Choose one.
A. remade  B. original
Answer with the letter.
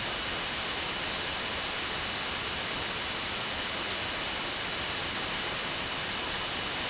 B